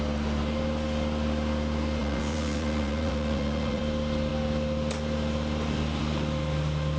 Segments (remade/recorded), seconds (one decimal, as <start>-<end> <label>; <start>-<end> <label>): 0.0-2.0 recorded; 2.0-3.8 remade; 3.8-7.0 recorded